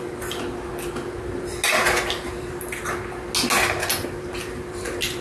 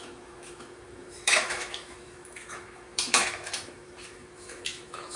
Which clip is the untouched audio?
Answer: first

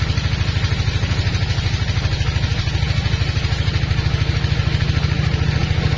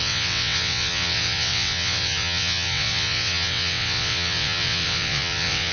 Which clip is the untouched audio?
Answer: first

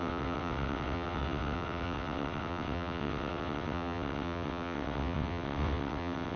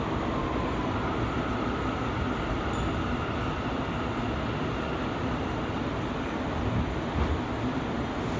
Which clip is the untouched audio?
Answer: second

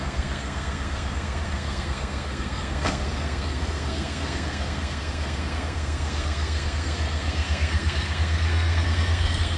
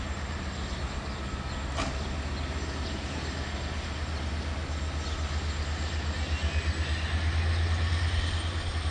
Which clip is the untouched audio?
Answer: second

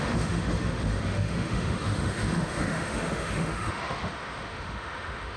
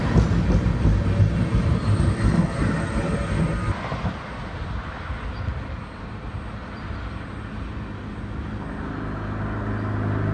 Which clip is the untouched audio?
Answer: second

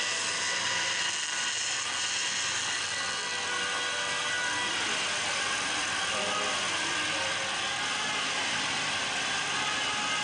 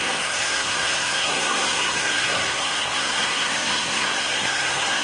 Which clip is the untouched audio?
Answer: first